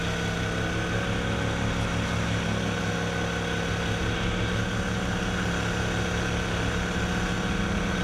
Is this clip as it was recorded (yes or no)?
yes